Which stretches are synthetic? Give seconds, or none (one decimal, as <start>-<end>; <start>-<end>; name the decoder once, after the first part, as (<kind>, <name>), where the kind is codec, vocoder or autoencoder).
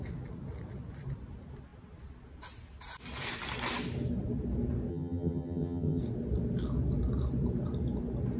4.9-6.0 (vocoder, HiFi-GAN)